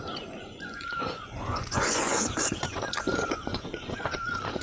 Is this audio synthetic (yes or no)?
yes